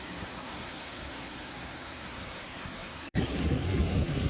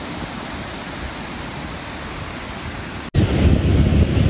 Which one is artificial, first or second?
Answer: first